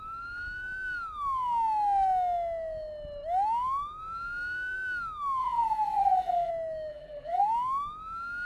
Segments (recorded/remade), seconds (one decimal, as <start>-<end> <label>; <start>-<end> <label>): 0.0-5.4 recorded; 5.4-6.5 remade; 6.5-6.9 recorded; 6.9-7.5 remade; 7.5-8.4 recorded